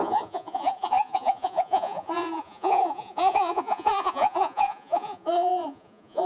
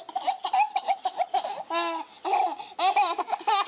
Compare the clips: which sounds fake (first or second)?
first